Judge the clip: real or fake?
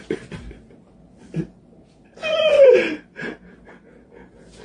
real